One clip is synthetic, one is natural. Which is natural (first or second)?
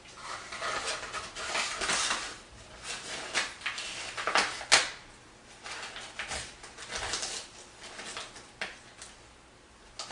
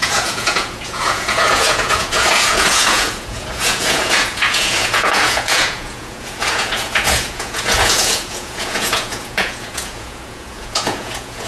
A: first